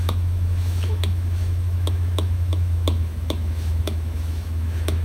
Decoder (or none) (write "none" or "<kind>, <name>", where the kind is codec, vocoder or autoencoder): autoencoder, DAC-VAE